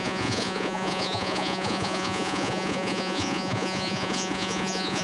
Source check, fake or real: fake